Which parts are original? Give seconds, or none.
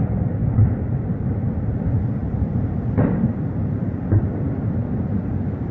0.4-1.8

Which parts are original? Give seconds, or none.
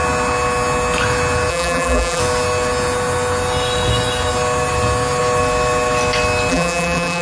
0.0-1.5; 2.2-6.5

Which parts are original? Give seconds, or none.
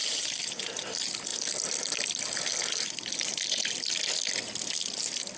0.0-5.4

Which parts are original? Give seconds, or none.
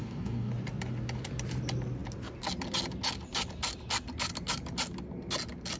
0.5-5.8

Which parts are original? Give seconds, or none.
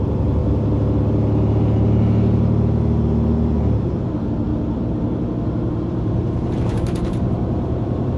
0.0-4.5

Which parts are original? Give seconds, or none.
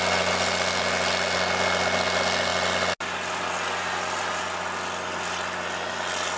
0.0-6.4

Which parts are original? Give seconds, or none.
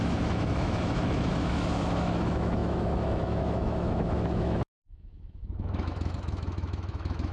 none